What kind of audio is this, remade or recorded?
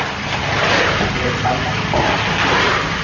recorded